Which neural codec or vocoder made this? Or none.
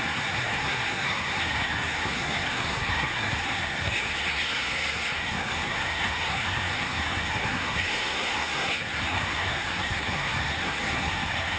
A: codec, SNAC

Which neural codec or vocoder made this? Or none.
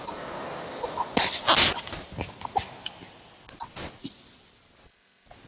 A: none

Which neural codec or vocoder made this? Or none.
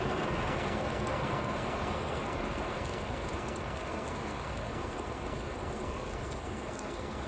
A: codec, SNAC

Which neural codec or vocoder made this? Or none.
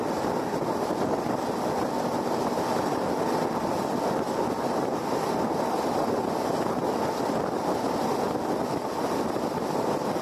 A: none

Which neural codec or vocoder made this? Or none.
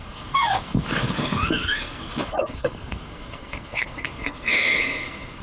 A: codec, SNAC